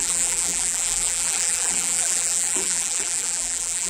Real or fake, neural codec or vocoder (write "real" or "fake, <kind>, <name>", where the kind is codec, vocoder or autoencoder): fake, vocoder, BigVGAN v2